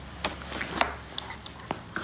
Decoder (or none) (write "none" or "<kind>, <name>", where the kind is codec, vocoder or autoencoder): none